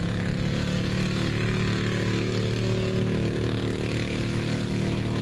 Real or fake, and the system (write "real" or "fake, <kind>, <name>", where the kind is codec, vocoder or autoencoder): real